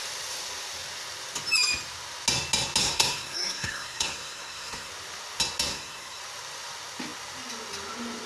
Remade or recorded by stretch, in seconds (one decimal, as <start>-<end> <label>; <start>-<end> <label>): 0.0-2.8 recorded; 2.8-4.9 remade; 4.9-5.7 recorded; 5.7-6.2 remade; 6.2-8.3 recorded